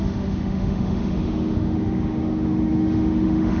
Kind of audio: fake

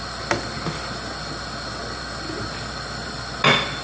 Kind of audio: real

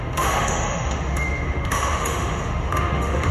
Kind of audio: fake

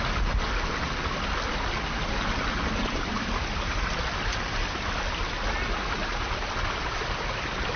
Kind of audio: real